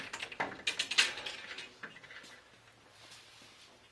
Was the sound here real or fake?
real